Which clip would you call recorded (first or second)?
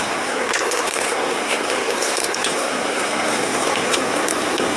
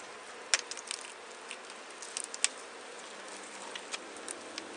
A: second